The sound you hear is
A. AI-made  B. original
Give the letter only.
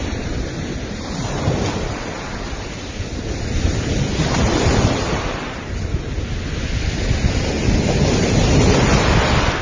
B